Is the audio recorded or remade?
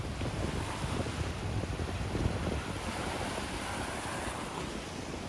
remade